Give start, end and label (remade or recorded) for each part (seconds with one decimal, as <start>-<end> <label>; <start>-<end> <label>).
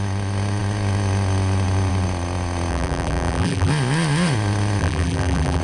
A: 0.0-2.7 recorded; 2.7-3.7 remade; 3.7-4.8 recorded; 4.8-5.6 remade